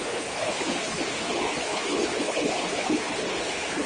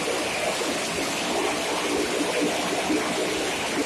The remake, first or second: first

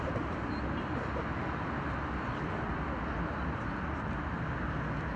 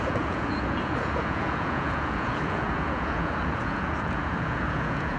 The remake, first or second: second